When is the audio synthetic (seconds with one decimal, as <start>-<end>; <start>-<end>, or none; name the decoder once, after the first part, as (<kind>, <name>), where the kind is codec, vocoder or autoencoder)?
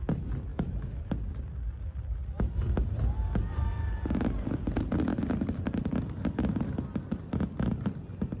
0.5-1.1 (autoencoder, DAC-VAE)